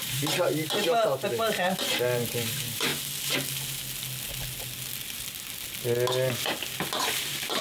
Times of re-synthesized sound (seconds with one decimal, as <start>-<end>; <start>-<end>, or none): 0.0-2.9; 7.0-7.6